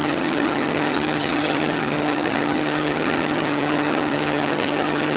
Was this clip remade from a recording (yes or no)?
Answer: yes